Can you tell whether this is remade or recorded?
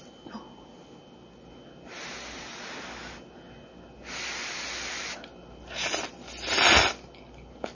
recorded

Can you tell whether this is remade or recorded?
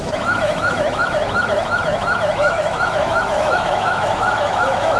remade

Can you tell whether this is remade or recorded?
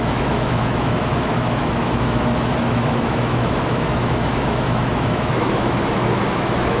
remade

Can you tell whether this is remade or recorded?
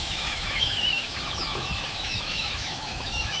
remade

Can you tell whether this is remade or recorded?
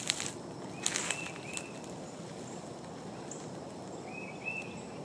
recorded